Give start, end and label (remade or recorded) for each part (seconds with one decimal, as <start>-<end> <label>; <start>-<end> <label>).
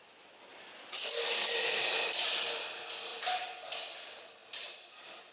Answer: 0.0-0.5 recorded; 0.5-1.1 remade; 1.1-4.4 recorded; 4.4-5.3 remade